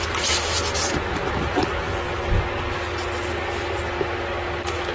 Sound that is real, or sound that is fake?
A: real